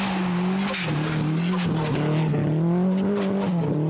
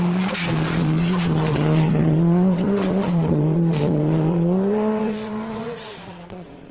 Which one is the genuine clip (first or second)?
first